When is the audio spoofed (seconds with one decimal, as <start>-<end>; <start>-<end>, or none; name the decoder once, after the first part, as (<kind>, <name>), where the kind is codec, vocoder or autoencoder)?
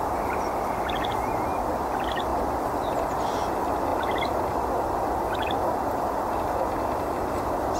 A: none